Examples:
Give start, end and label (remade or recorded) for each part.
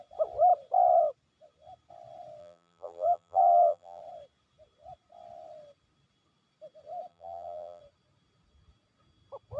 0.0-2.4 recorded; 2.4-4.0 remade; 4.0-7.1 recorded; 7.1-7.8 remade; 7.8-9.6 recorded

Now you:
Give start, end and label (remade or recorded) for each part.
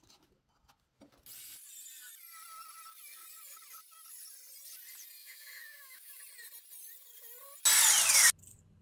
0.0-5.2 recorded; 5.2-6.2 remade; 6.2-8.8 recorded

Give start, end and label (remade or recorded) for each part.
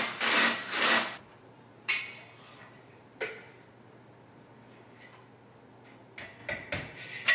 0.0-1.3 recorded; 1.3-3.7 remade; 3.7-6.4 recorded; 6.4-7.3 remade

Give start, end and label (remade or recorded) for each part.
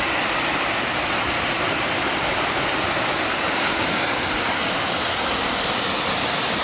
0.0-3.3 recorded; 3.3-4.0 remade; 4.0-6.6 recorded